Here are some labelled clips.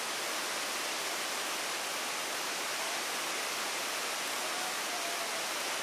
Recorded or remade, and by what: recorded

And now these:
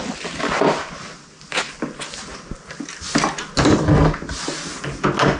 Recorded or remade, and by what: recorded